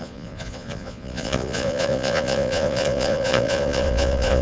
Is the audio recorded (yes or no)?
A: no